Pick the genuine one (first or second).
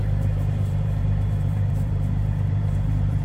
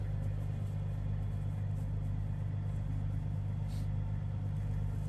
second